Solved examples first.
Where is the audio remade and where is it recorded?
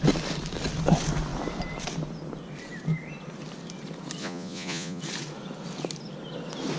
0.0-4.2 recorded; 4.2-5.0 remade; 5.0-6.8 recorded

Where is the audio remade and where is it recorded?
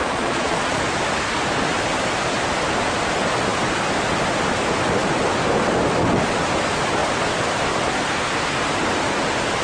0.0-0.8 remade; 0.8-9.6 recorded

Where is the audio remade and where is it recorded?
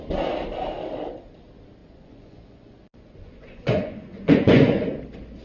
0.0-1.8 recorded; 1.8-5.0 remade; 5.0-5.4 recorded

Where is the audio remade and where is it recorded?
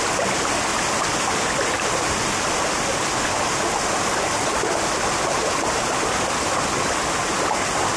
0.0-8.0 recorded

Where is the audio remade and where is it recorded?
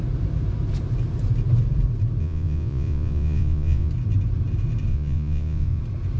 0.0-2.2 recorded; 2.2-3.9 remade; 3.9-4.9 recorded; 4.9-5.8 remade; 5.8-6.2 recorded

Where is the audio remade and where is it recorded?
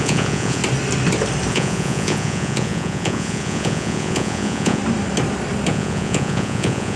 0.0-0.6 remade; 0.6-1.5 recorded; 1.5-4.8 remade; 4.8-5.7 recorded; 5.7-7.0 remade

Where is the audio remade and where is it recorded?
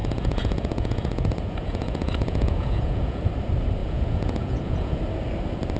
0.0-3.2 remade; 3.2-3.8 recorded; 3.8-5.0 remade; 5.0-5.8 recorded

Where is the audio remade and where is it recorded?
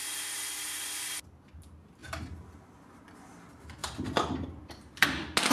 0.0-5.5 recorded